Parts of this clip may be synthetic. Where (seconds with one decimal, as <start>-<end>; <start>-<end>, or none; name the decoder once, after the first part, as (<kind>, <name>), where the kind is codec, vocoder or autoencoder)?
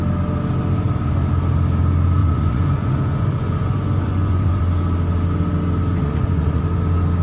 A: 2.2-4.6 (vocoder, Vocos); 6.0-6.6